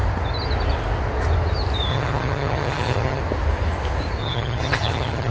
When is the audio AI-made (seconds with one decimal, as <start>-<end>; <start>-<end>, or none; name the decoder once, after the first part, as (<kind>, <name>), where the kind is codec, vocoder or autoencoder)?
1.9-3.2 (vocoder, HiFi-GAN); 4.2-5.3